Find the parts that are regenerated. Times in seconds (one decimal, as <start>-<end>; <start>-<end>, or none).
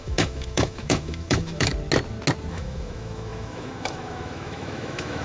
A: 0.0-1.7; 2.5-5.2